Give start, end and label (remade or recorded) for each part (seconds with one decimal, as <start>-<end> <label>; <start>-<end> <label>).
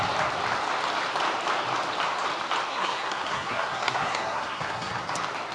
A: 0.0-2.7 recorded; 2.7-5.0 remade; 5.0-5.5 recorded